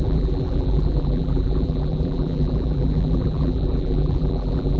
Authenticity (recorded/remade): remade